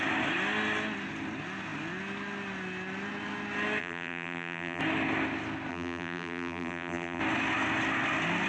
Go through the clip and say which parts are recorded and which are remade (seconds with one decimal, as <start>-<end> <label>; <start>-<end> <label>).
0.0-3.8 recorded; 3.8-4.8 remade; 4.8-5.7 recorded; 5.7-7.2 remade; 7.2-8.5 recorded